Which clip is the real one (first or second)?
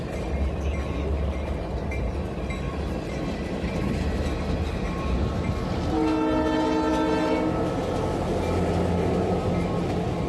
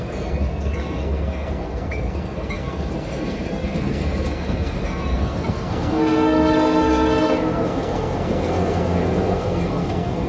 first